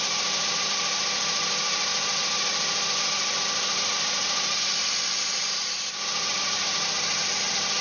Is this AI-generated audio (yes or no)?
no